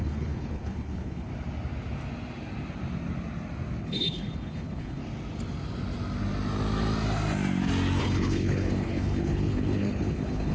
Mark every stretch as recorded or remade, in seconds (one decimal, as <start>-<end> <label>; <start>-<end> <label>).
0.0-1.3 remade; 1.3-3.8 recorded; 3.8-5.0 remade; 5.0-8.0 recorded; 8.0-10.5 remade